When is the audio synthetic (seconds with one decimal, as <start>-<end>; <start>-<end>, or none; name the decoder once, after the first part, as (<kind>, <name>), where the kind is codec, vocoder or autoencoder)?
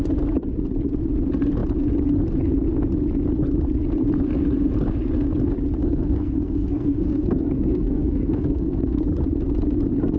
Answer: 5.8-9.0 (codec, SNAC)